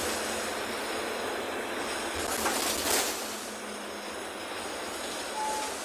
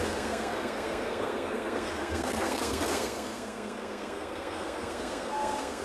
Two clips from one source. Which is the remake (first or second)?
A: second